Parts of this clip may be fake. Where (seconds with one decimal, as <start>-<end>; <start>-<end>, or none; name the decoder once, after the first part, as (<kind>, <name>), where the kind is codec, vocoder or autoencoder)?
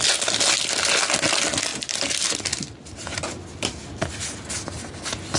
none